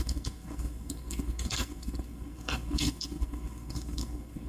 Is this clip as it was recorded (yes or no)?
no